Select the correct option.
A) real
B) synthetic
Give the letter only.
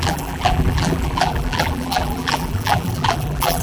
B